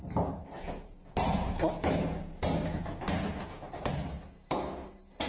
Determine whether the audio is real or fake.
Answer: real